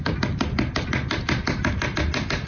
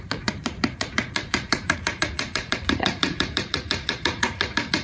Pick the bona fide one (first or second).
first